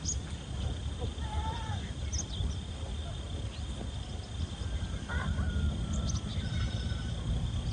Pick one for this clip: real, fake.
real